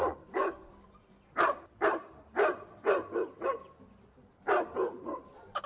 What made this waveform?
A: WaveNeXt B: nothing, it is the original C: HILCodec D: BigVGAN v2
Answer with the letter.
D